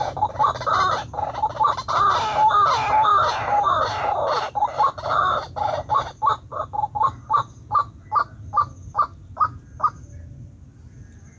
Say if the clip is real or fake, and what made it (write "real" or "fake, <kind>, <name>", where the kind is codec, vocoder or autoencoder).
real